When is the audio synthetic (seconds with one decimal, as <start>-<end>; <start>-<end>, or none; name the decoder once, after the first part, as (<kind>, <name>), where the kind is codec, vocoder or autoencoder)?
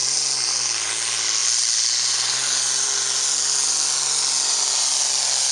0.0-5.5 (vocoder, BigVGAN v2)